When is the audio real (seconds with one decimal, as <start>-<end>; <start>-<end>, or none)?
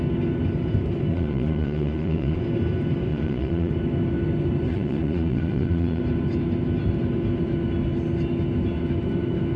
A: 0.0-1.1; 2.4-3.1; 3.7-4.7; 6.0-9.6